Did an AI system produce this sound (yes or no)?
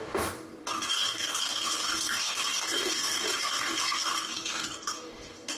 yes